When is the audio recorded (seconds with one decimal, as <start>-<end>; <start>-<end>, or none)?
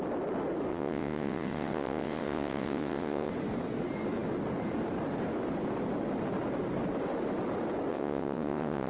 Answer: 0.0-0.7; 3.3-7.9